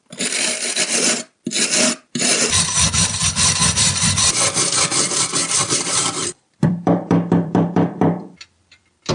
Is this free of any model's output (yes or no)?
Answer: no